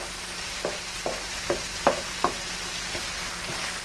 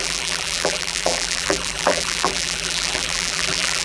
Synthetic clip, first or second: second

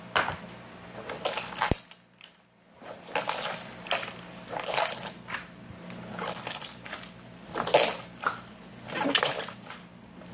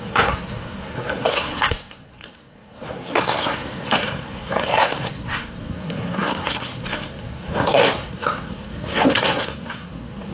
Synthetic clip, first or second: second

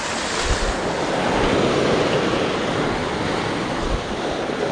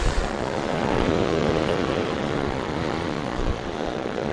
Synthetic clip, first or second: second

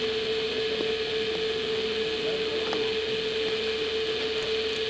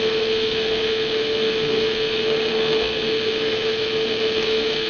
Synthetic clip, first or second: second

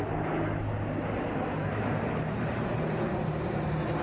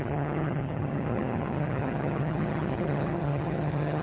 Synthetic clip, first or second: second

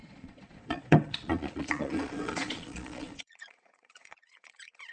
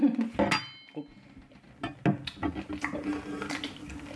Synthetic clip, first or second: first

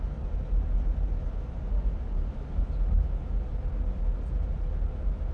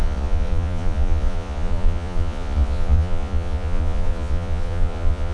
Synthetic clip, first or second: second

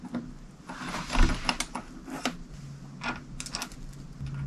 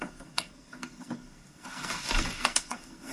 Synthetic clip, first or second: second